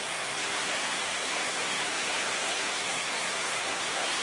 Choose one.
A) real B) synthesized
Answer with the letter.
B